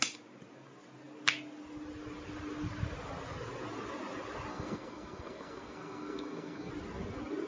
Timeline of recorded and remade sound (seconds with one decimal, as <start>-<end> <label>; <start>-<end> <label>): 0.0-4.5 recorded; 4.5-6.7 remade; 6.7-7.5 recorded